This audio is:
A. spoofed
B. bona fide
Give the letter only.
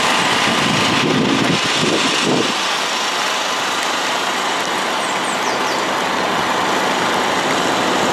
B